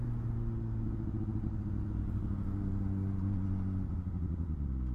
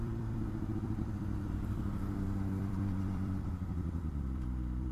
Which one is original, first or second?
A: first